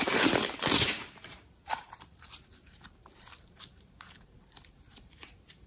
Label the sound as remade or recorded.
remade